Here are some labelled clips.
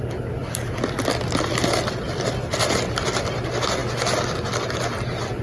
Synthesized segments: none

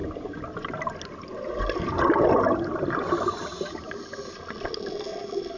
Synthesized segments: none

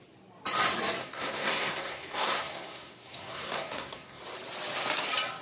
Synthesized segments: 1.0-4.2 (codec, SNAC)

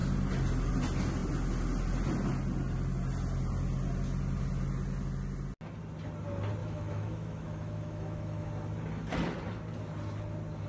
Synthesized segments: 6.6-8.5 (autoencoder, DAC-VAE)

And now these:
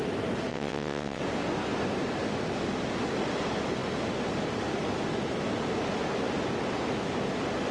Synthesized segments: 0.5-1.2 (vocoder, WaveNeXt)

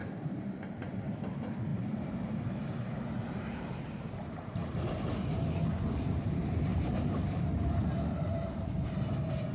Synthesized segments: 0.0-0.5 (vocoder, BigVGAN v2); 1.7-5.9; 6.7-8.7

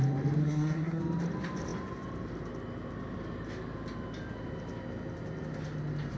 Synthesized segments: 0.4-1.0 (codec, SNAC)

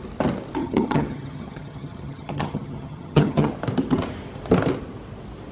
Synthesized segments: 0.6-3.5 (vocoder, HiFi-GAN)